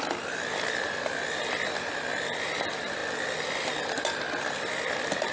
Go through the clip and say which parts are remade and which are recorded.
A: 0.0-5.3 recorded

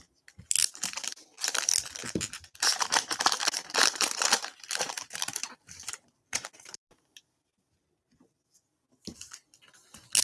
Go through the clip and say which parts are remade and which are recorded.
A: 0.0-2.0 recorded; 2.0-7.2 remade; 7.2-10.2 recorded

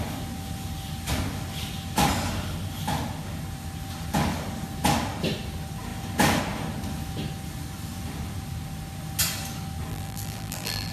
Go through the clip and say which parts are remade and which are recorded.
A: 0.0-9.9 recorded; 9.9-10.9 remade